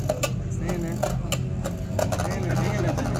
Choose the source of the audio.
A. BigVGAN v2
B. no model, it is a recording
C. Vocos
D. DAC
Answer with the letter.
B